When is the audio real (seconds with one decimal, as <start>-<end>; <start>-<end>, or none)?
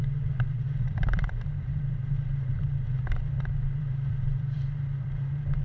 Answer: none